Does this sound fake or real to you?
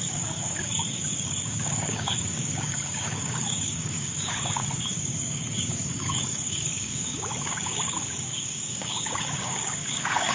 fake